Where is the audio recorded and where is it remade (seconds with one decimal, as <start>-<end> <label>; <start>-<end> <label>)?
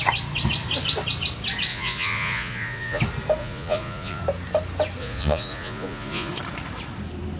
0.0-1.7 recorded; 1.7-3.0 remade; 3.0-3.4 recorded; 3.4-4.2 remade; 4.2-5.0 recorded; 5.0-6.3 remade; 6.3-7.4 recorded